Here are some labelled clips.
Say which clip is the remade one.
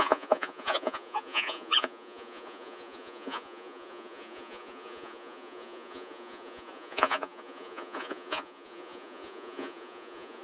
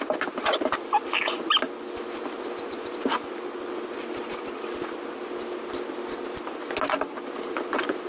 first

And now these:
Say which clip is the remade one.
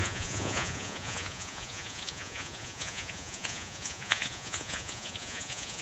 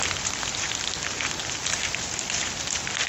first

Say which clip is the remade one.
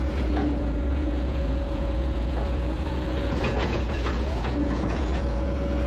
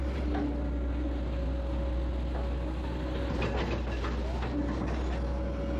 first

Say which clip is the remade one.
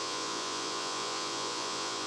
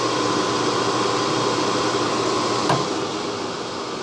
first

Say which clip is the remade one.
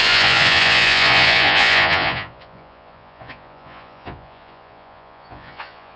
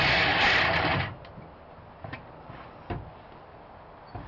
first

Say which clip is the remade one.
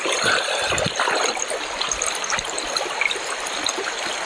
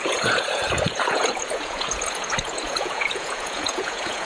second